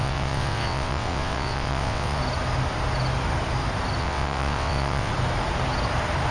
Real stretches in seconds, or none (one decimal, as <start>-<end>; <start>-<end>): 2.2-4.0; 5.1-6.3

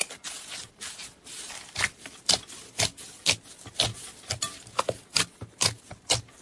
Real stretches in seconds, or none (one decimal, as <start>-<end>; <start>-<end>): 2.2-3.9; 5.4-6.4

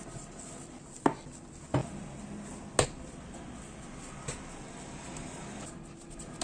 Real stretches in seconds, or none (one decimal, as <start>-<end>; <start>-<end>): 0.0-6.4

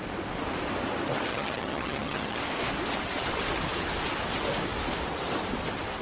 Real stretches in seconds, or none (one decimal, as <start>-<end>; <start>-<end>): 0.0-1.3; 2.4-6.0